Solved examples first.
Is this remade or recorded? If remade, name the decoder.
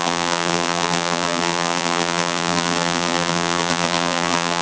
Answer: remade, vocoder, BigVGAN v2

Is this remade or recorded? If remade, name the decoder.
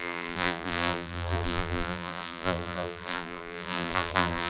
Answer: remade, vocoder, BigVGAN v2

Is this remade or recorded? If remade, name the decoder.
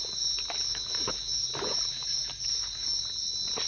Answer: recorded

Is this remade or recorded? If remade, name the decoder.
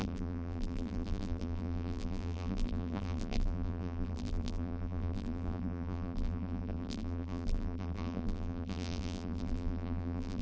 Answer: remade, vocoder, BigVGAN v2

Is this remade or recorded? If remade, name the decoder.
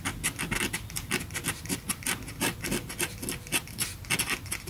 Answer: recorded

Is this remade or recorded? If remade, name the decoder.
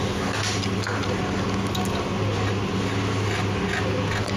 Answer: recorded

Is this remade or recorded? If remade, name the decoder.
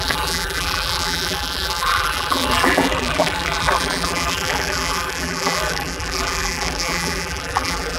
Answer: remade, vocoder, BigVGAN v2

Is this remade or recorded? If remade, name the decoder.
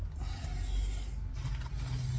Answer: recorded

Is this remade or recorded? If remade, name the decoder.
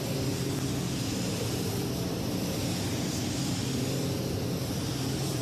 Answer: remade, vocoder, BigVGAN v2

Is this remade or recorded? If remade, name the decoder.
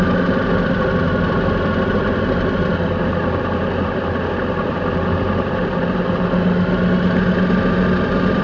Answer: recorded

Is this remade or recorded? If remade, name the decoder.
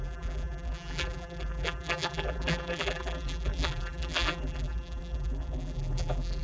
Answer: remade, vocoder, BigVGAN v2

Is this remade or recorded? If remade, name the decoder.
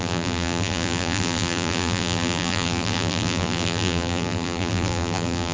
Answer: remade, vocoder, BigVGAN v2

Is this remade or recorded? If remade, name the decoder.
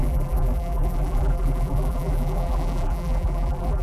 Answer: remade, vocoder, BigVGAN v2